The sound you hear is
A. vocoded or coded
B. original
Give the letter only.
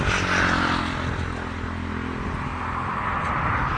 B